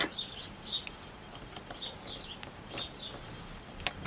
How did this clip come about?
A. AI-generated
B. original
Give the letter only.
B